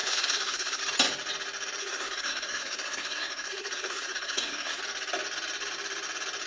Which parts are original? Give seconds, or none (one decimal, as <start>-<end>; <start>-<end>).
0.8-1.8; 4.8-6.5